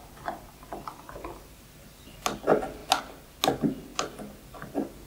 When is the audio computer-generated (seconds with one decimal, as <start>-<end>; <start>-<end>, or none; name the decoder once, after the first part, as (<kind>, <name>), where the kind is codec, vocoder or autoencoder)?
none